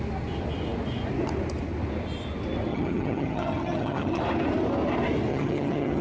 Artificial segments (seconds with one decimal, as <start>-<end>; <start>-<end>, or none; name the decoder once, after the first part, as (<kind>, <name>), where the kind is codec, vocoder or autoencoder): 2.7-4.2 (vocoder, HiFi-GAN); 5.3-6.0